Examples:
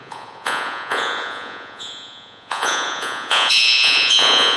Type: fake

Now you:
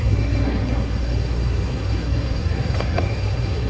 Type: fake